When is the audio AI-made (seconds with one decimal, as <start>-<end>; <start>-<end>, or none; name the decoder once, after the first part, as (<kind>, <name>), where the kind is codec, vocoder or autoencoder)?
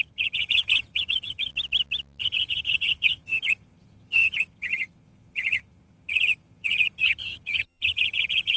0.0-1.5 (vocoder, HiFi-GAN); 2.2-8.6